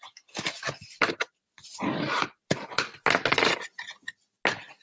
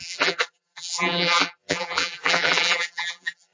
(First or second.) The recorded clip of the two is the first